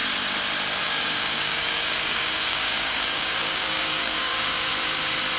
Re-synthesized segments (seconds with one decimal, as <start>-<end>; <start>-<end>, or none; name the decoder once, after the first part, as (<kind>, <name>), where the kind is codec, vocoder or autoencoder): 0.8-4.7 (codec, DAC)